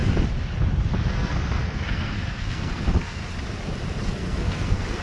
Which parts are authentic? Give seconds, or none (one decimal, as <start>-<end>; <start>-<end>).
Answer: 0.0-1.1; 3.2-4.0